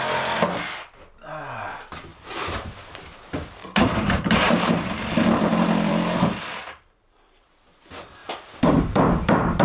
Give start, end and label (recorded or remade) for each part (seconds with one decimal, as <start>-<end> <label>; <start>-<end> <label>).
0.0-2.1 recorded; 2.1-3.0 remade; 3.0-3.6 recorded; 3.6-7.5 remade; 7.5-8.2 recorded; 8.2-9.6 remade